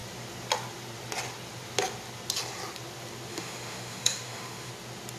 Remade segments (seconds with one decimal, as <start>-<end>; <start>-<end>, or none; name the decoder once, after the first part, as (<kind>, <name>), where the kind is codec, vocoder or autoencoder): 3.3-4.7 (autoencoder, DAC-VAE)

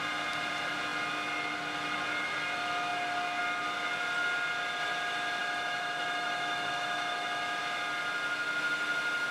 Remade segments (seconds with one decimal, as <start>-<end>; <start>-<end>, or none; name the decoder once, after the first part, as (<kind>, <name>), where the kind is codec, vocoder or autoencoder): 5.4-7.6 (autoencoder, DAC-VAE)

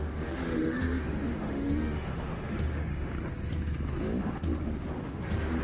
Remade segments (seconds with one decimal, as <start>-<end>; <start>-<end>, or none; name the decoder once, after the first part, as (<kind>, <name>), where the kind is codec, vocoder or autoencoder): 0.0-3.1 (autoencoder, DAC-VAE); 4.6-5.6

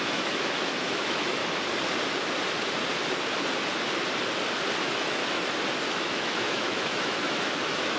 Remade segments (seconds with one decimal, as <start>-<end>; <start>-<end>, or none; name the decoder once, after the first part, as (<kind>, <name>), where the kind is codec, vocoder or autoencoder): 0.0-1.4 (autoencoder, DAC-VAE); 4.8-5.2; 5.9-8.0

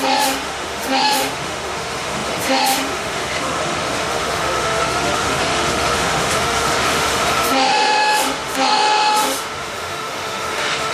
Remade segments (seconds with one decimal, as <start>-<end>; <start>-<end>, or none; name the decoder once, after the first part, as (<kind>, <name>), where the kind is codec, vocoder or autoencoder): 0.0-10.9 (autoencoder, DAC-VAE)

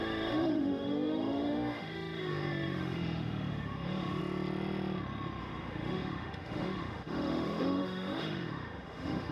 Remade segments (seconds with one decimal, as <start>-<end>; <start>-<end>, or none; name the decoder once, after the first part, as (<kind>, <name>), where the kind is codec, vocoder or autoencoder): 0.0-4.2 (autoencoder, DAC-VAE); 5.4-9.3

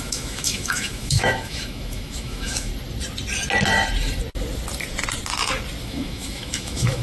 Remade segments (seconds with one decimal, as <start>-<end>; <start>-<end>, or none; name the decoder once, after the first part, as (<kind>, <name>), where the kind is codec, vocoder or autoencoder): 0.0-2.7 (autoencoder, DAC-VAE); 5.8-7.0

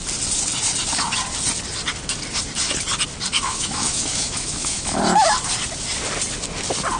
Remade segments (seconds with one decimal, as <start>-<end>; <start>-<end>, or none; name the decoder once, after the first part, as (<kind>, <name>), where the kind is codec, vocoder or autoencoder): 3.3-5.0 (autoencoder, DAC-VAE)